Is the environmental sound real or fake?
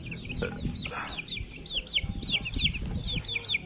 real